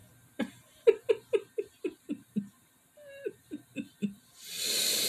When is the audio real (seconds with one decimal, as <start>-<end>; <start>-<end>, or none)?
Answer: 0.0-5.1